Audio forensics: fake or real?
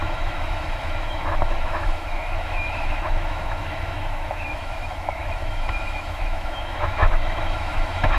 fake